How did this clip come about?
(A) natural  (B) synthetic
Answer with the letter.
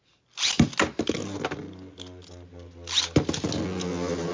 A